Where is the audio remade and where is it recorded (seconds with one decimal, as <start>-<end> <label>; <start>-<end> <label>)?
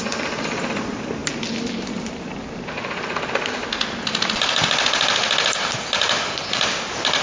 0.0-7.2 recorded